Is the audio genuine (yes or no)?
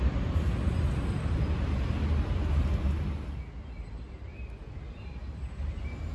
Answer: yes